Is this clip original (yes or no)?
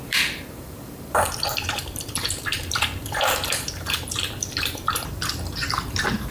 no